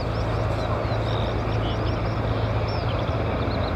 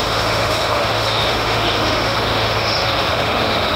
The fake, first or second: second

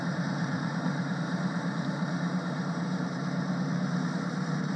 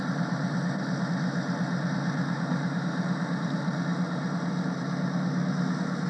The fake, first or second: first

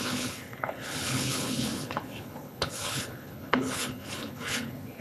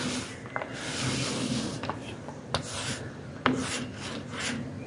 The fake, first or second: first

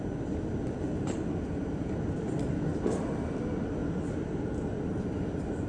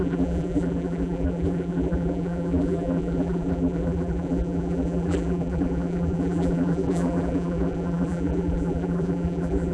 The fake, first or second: second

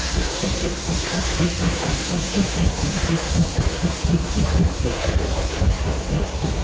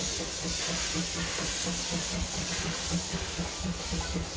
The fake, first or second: first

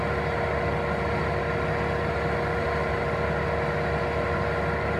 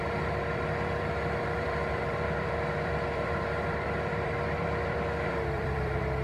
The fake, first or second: second